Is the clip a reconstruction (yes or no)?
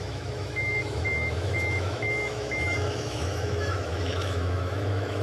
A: yes